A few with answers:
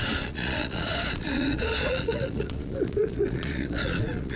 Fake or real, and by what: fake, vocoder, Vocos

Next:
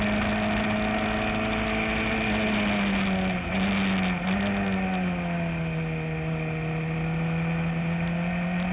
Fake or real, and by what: real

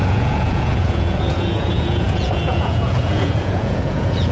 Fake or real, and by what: fake, vocoder, Vocos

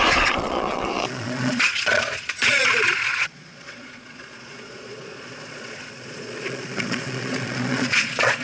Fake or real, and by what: fake, vocoder, Vocos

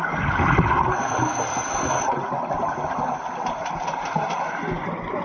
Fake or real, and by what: real